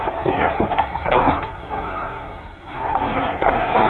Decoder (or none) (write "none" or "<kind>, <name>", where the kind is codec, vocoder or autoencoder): codec, SNAC